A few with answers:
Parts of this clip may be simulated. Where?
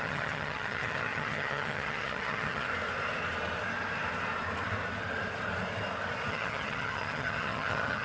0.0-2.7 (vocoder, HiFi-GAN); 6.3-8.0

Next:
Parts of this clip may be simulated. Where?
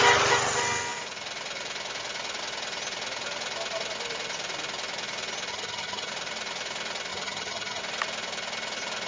5.5-6.1 (vocoder, HiFi-GAN); 7.1-7.8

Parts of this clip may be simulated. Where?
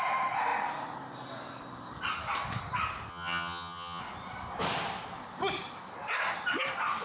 3.1-4.0 (vocoder, HiFi-GAN)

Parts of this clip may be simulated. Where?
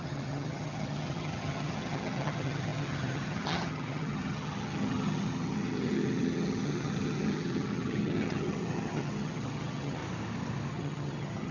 0.0-10.0 (vocoder, HiFi-GAN); 10.7-11.5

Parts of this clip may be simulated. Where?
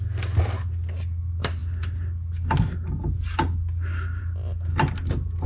none